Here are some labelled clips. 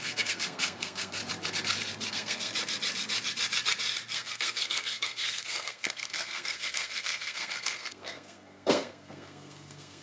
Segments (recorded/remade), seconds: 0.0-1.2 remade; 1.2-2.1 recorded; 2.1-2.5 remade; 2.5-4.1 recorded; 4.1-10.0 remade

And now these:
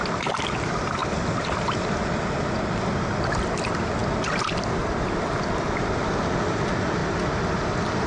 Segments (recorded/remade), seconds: 0.0-8.1 recorded